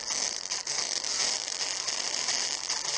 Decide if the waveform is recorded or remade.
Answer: recorded